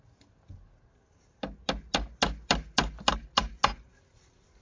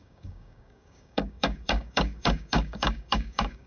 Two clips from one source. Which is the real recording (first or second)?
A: first